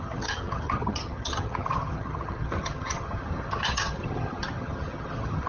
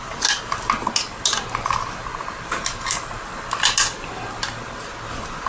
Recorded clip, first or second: second